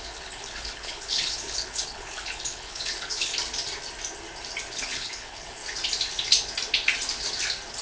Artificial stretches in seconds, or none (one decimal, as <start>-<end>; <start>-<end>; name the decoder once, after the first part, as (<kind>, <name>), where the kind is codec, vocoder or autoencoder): 0.0-3.3 (codec, HILCodec); 4.7-5.6